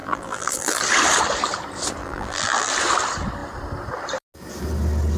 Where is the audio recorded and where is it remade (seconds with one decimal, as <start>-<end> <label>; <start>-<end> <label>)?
0.0-0.8 remade; 0.8-2.0 recorded; 2.0-2.7 remade; 2.7-5.2 recorded